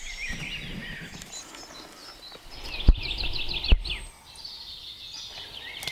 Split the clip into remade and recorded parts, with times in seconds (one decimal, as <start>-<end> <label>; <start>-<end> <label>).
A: 0.0-5.9 recorded